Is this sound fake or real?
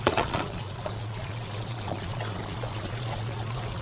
fake